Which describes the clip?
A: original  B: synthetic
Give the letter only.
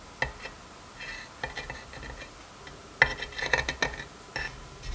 A